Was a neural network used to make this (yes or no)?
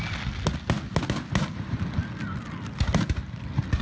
no